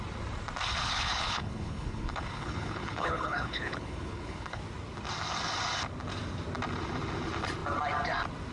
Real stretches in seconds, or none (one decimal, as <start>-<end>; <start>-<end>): 0.0-0.8; 4.6-8.5